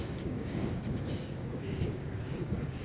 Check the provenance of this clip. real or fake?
fake